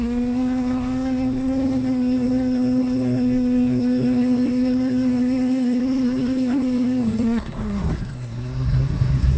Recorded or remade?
remade